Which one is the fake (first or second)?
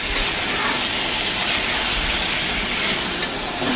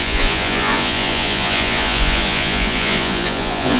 second